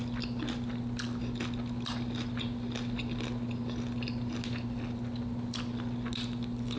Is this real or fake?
real